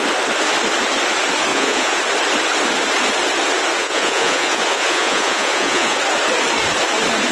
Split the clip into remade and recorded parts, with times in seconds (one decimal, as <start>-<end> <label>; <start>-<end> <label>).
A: 0.0-1.5 recorded; 1.5-2.0 remade; 2.0-3.8 recorded; 3.8-6.0 remade; 6.0-7.3 recorded